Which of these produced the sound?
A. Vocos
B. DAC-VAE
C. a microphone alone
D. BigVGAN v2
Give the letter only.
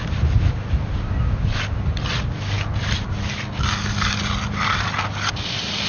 C